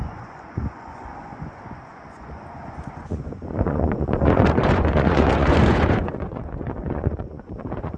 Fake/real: fake